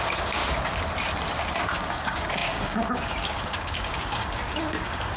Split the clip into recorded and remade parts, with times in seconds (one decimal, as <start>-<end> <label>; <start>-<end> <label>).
0.0-0.4 remade; 0.4-1.6 recorded; 1.6-5.2 remade